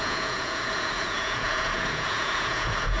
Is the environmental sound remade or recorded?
remade